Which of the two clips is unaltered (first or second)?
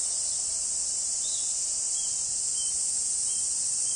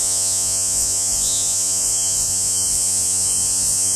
first